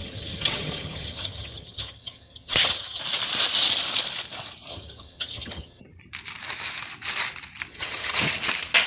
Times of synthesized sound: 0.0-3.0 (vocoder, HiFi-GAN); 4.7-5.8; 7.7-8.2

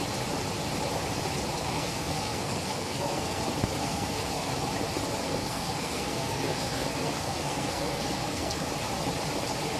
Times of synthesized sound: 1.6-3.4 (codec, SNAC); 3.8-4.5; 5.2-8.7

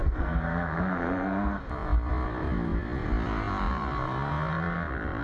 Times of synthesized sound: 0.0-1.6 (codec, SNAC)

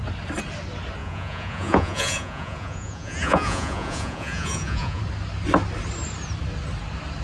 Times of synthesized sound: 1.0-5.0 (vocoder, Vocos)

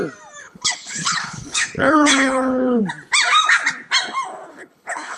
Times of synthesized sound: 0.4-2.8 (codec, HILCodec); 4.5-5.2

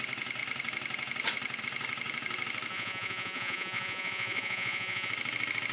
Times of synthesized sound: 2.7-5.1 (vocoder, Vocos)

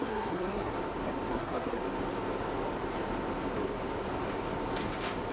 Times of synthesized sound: 0.0-0.7 (codec, SNAC); 1.3-1.8